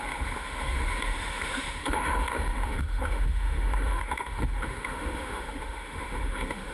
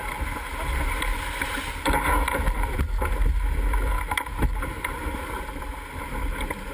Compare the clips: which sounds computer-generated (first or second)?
first